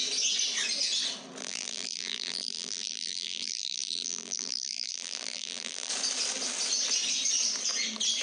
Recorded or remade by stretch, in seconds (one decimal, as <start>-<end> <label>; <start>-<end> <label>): 0.0-1.4 recorded; 1.4-5.9 remade; 5.9-8.2 recorded